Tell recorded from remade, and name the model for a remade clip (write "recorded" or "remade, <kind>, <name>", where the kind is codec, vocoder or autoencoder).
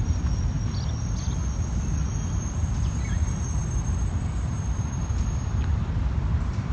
recorded